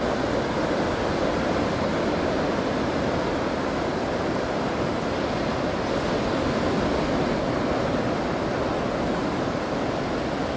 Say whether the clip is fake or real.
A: real